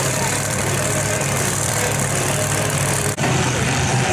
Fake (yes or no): yes